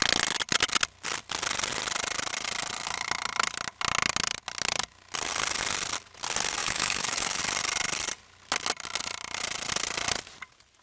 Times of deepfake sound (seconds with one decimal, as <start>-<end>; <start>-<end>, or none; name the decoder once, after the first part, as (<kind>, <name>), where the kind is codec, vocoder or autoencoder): 6.6-7.4 (autoencoder, DAC-VAE)